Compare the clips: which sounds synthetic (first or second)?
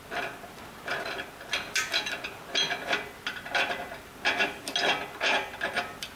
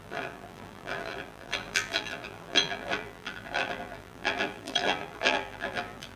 second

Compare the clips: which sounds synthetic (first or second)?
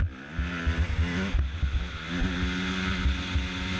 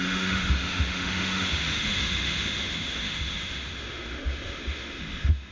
second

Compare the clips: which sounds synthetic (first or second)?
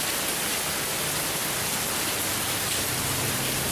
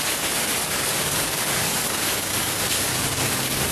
second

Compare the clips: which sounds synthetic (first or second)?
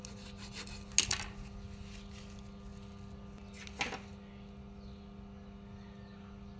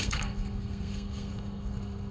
second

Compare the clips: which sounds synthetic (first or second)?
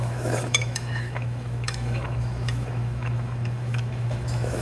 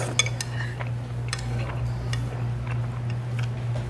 first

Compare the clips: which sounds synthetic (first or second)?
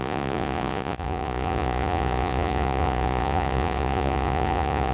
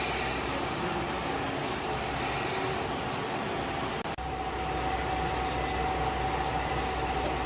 first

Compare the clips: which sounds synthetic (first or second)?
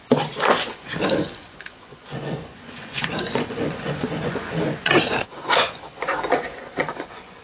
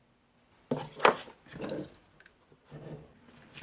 first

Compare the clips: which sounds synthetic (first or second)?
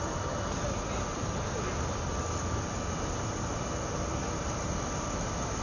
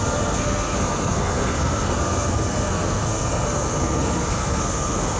second